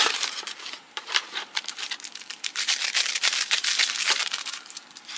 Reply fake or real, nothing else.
fake